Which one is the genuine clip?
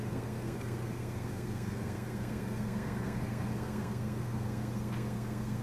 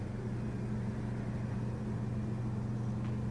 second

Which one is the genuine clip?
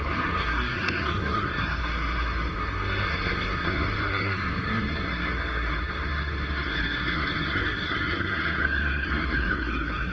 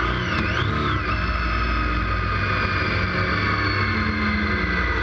second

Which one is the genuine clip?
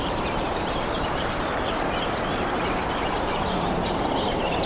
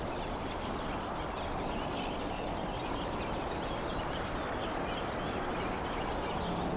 second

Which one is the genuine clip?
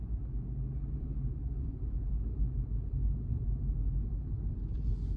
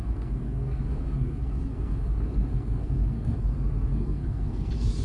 first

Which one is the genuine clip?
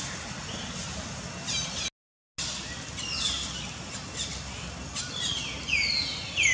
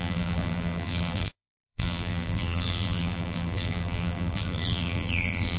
first